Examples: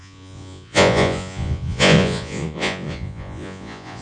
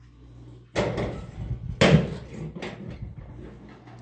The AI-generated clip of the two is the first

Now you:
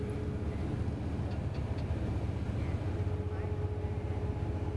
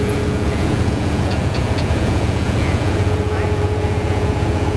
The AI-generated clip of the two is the second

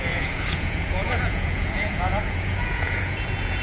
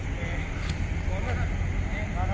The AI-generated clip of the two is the first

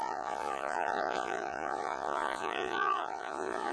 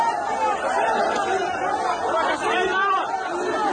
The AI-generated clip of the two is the first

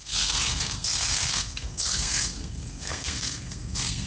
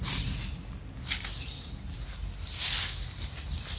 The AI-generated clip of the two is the first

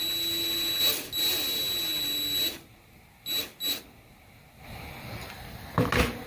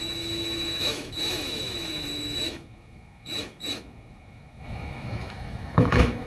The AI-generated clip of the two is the second